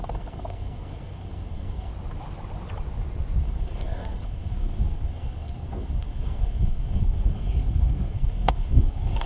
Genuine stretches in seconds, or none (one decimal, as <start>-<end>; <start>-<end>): 1.9-3.4